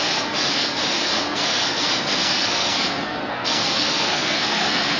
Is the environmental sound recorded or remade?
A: remade